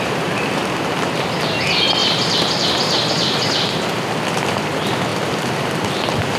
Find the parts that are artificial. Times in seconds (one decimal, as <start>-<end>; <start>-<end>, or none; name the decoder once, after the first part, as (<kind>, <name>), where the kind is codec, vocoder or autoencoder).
2.0-3.1 (vocoder, BigVGAN v2); 5.1-5.9